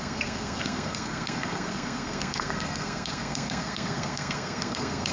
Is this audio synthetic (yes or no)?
yes